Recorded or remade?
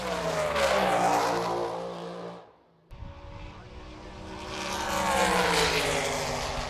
recorded